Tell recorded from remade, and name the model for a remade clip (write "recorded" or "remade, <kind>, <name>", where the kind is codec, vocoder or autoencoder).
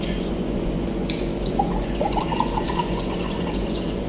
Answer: remade, vocoder, Vocos